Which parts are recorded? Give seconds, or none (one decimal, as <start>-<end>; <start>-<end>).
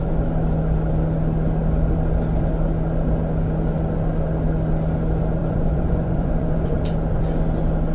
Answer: 0.0-5.4; 6.8-7.9